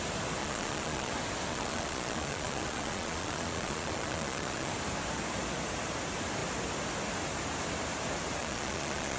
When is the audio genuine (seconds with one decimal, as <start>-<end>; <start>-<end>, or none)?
0.0-0.4; 1.1-1.5; 4.7-8.4